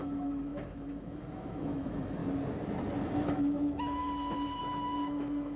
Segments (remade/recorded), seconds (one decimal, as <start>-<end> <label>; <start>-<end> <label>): 0.0-2.2 remade; 2.2-3.0 recorded; 3.0-4.0 remade; 4.0-4.6 recorded; 4.6-5.6 remade